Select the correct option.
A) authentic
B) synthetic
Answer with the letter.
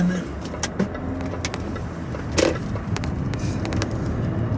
A